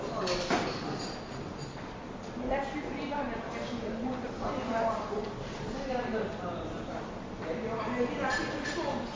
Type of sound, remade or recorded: recorded